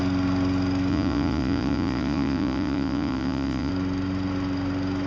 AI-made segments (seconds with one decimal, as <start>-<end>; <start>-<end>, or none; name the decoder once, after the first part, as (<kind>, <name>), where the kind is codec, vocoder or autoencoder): 0.9-3.7 (vocoder, Vocos)

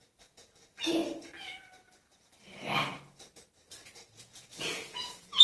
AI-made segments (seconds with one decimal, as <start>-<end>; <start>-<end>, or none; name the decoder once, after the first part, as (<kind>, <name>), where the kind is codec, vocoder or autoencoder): 0.0-1.0 (vocoder, Vocos); 4.1-5.4

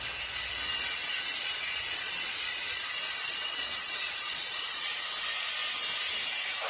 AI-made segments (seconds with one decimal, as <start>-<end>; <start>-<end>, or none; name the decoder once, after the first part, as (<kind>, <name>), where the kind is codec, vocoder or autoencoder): 1.0-4.9 (vocoder, Vocos)